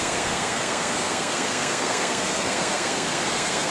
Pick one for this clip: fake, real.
fake